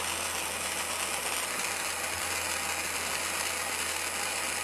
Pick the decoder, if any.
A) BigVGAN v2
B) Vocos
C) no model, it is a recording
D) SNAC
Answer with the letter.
C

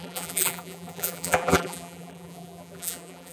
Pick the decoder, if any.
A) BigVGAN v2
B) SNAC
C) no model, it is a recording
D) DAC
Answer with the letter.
A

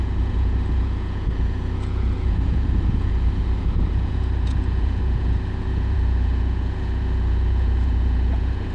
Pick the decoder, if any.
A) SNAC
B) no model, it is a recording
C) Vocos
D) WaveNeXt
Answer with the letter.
C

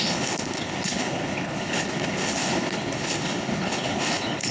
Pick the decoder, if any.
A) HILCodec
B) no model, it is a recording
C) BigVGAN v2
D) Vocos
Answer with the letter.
A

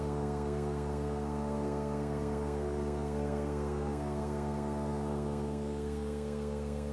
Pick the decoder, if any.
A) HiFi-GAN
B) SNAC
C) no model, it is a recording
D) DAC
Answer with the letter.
B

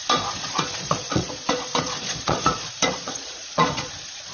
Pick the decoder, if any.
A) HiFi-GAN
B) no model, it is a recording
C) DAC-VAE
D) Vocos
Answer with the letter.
D